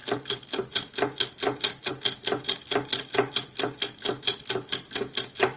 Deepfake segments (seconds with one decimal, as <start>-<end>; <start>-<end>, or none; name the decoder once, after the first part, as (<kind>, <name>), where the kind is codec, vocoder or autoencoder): none